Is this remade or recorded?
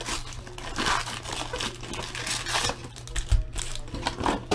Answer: recorded